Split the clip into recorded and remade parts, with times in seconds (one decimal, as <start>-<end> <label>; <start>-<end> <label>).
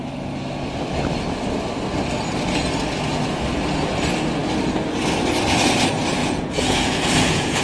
0.0-6.2 recorded; 6.2-7.6 remade